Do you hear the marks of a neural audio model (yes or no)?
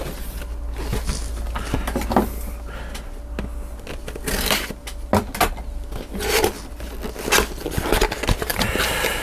no